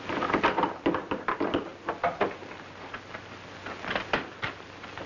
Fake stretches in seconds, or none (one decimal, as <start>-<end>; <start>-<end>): none